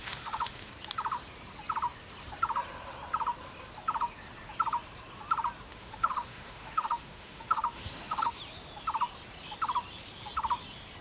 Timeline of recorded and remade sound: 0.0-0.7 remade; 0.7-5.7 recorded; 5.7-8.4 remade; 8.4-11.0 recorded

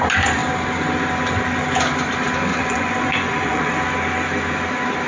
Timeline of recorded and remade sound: 0.0-2.5 recorded; 2.5-3.7 remade; 3.7-5.1 recorded

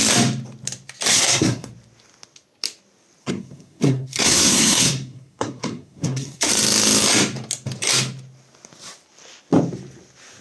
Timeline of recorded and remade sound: 0.0-1.1 recorded; 1.1-1.7 remade; 1.7-3.2 recorded; 3.2-6.5 remade; 6.5-10.4 recorded

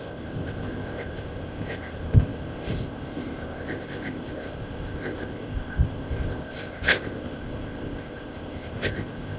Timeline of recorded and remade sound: 0.0-9.4 remade

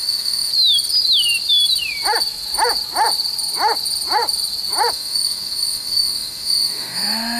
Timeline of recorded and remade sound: 0.0-0.5 remade; 0.5-4.9 recorded; 4.9-7.4 remade

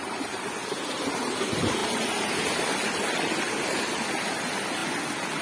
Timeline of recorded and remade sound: 0.0-5.4 recorded

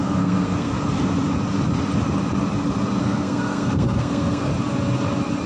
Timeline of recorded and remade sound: 0.0-0.7 remade; 0.7-3.0 recorded; 3.0-4.5 remade; 4.5-5.5 recorded